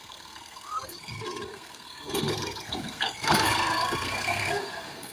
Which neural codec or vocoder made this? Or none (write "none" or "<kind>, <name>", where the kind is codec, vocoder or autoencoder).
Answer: codec, SNAC